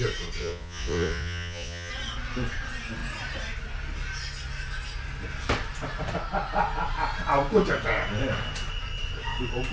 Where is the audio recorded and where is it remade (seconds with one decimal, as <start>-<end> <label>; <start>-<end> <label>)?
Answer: 0.0-0.4 recorded; 0.4-1.9 remade; 1.9-9.7 recorded